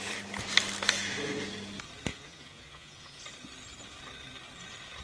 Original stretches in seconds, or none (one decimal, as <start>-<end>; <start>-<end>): 0.0-2.1; 3.2-5.0